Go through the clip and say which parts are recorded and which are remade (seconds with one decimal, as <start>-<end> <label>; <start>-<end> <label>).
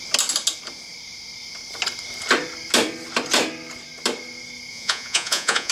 0.0-4.7 recorded; 4.7-5.7 remade